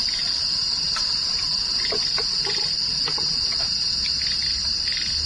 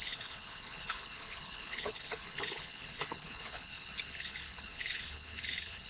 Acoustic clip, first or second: first